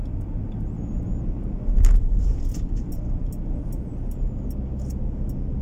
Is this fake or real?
real